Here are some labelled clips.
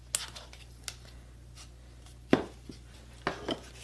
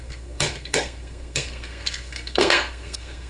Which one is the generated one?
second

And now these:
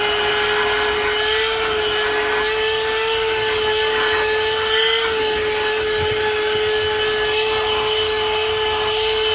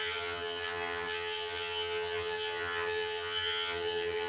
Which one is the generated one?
second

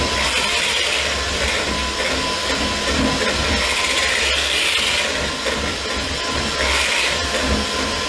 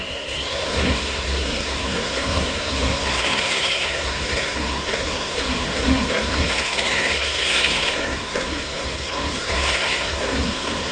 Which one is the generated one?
second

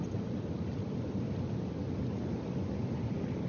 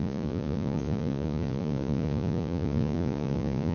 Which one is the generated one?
second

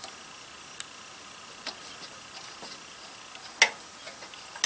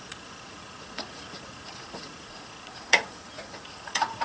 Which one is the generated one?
second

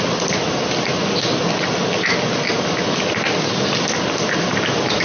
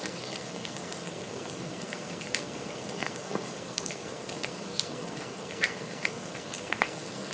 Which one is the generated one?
second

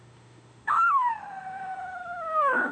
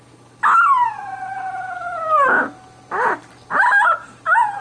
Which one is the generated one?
first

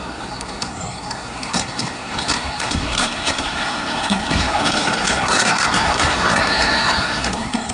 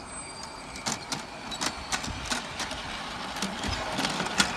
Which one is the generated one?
first